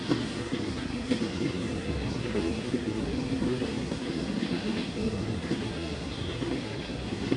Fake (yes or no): yes